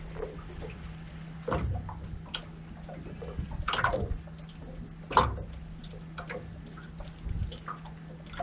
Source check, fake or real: real